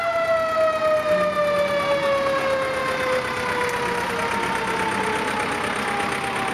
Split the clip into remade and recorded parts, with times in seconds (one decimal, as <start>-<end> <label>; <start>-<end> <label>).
0.0-6.5 recorded